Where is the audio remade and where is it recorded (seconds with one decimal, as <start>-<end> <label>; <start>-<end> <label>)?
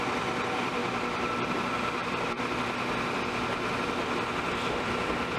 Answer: 0.0-5.4 recorded